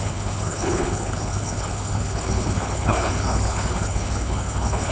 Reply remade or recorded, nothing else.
remade